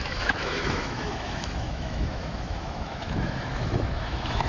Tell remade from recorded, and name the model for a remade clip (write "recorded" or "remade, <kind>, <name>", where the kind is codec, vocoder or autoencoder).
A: remade, autoencoder, DAC-VAE